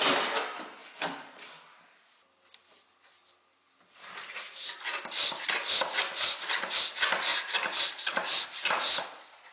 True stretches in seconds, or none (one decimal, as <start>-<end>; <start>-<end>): 0.0-9.5